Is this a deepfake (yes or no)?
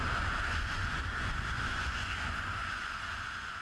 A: yes